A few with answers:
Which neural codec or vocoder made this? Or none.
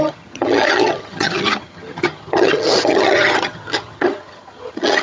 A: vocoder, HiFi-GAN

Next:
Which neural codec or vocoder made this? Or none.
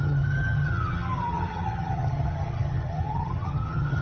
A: vocoder, HiFi-GAN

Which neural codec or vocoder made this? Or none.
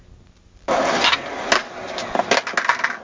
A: none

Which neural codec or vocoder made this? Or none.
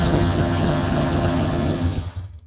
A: vocoder, HiFi-GAN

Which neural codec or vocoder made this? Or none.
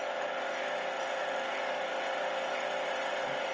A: none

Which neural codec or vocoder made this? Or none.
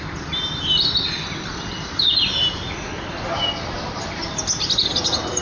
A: none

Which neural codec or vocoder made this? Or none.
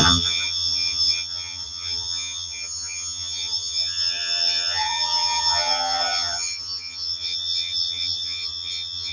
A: vocoder, HiFi-GAN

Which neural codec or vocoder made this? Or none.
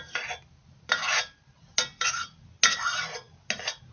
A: none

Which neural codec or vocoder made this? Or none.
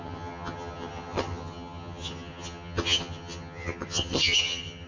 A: vocoder, HiFi-GAN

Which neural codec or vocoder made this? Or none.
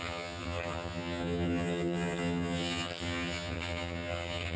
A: vocoder, HiFi-GAN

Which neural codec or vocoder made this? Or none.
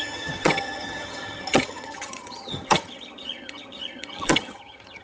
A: vocoder, HiFi-GAN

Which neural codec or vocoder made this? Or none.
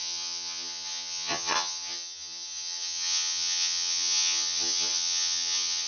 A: vocoder, HiFi-GAN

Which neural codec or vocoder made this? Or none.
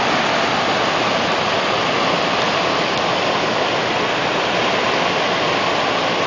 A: none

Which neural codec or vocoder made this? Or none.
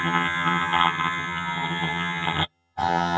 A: vocoder, HiFi-GAN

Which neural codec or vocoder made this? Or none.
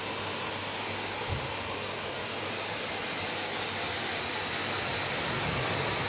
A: none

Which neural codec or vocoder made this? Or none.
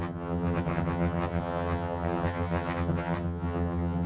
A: vocoder, HiFi-GAN